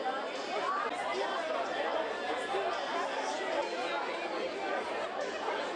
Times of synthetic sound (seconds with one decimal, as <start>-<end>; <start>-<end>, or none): none